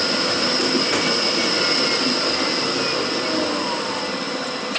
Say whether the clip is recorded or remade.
recorded